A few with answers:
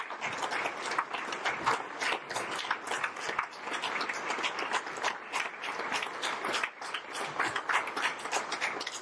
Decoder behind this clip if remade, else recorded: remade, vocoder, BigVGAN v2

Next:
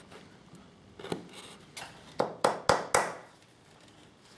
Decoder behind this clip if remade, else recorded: recorded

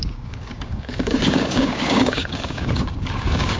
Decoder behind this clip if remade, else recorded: remade, codec, DAC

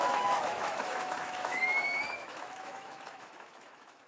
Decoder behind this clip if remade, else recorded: remade, autoencoder, DAC-VAE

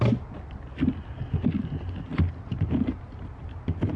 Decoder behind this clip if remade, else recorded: recorded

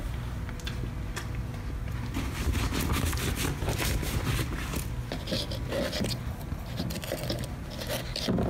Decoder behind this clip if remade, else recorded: recorded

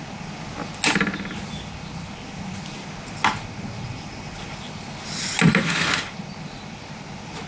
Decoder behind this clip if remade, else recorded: recorded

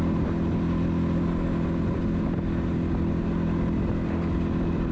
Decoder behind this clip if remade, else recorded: recorded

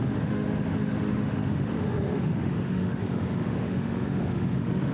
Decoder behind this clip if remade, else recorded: remade, autoencoder, DAC-VAE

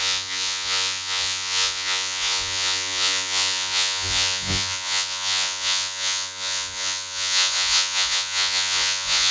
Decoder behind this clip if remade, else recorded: remade, vocoder, Vocos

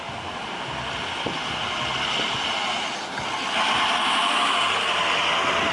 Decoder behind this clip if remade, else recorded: recorded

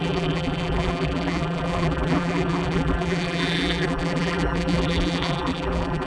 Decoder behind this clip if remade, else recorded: remade, vocoder, BigVGAN v2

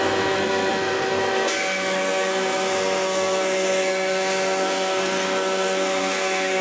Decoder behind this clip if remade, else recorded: remade, codec, SNAC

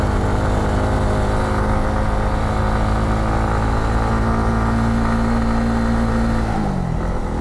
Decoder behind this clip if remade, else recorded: recorded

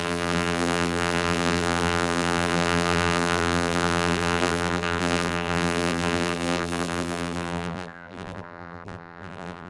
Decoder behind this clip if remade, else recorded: remade, vocoder, BigVGAN v2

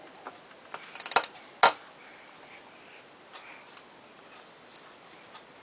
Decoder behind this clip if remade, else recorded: recorded